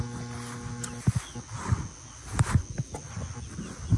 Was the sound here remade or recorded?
recorded